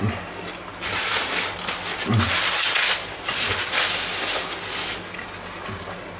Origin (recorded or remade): recorded